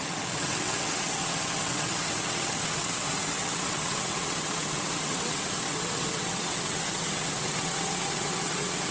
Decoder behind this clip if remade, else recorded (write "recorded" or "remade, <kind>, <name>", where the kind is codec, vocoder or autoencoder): remade, vocoder, WaveNeXt